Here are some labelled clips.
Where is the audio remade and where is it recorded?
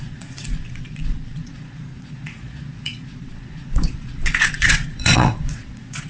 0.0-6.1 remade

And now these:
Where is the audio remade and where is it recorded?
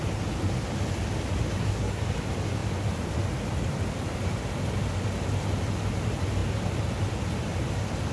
0.0-1.5 recorded; 1.5-2.0 remade; 2.0-8.1 recorded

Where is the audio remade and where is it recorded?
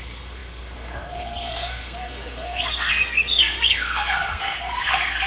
0.0-5.3 remade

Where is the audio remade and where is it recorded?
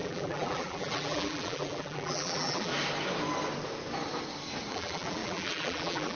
0.0-2.7 remade; 2.7-4.7 recorded; 4.7-6.2 remade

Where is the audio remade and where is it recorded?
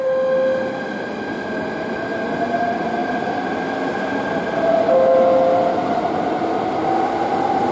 0.0-7.7 recorded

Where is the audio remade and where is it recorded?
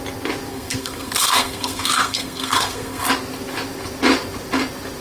0.0-0.5 recorded; 0.5-3.1 remade; 3.1-5.0 recorded